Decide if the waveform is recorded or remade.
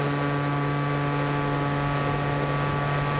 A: recorded